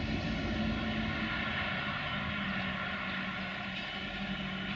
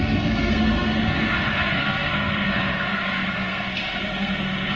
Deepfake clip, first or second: second